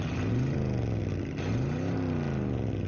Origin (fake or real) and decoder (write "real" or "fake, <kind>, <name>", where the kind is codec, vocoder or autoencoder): real